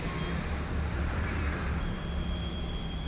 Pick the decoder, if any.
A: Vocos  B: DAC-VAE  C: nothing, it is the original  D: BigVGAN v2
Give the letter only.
D